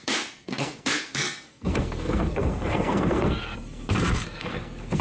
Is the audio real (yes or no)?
no